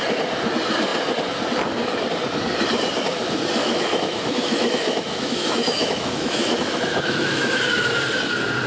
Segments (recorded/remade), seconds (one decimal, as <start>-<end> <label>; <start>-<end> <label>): 0.0-3.6 recorded; 3.6-7.6 remade; 7.6-8.7 recorded

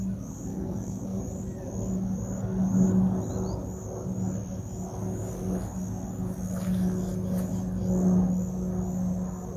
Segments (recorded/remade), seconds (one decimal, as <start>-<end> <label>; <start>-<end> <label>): 0.0-0.5 recorded; 0.5-1.2 remade; 1.2-9.6 recorded

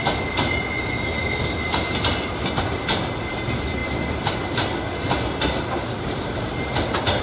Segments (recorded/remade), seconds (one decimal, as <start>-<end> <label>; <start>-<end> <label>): 0.0-7.2 recorded

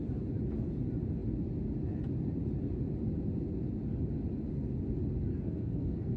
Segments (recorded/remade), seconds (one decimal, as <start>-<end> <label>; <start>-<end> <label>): 0.0-5.3 recorded; 5.3-6.2 remade

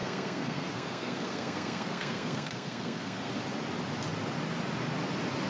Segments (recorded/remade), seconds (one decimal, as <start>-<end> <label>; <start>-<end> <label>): 0.0-3.3 remade; 3.3-5.5 recorded

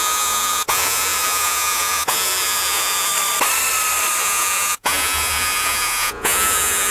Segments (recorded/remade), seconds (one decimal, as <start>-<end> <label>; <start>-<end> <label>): 0.0-3.1 remade; 3.1-4.2 recorded; 4.2-6.9 remade

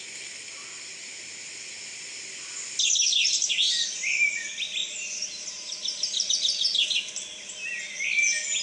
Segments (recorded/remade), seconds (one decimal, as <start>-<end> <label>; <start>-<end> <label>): 0.0-4.8 recorded; 4.8-6.3 remade; 6.3-8.6 recorded

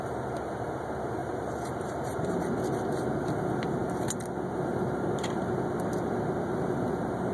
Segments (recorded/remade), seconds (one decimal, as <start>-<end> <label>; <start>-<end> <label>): 0.0-1.2 recorded; 1.2-2.4 remade; 2.4-7.3 recorded